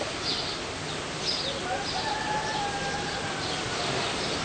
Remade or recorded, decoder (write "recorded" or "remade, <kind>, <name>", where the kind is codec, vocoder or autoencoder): recorded